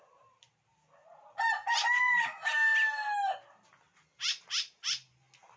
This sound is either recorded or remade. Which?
recorded